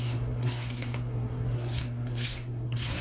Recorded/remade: remade